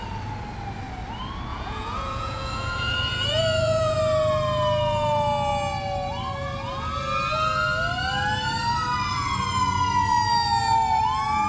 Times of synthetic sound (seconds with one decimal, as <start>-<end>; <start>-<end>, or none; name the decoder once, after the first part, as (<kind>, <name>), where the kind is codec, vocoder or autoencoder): 1.5-4.0 (vocoder, Vocos)